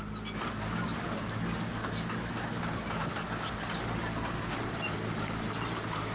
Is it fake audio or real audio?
real